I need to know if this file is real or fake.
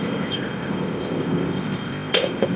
fake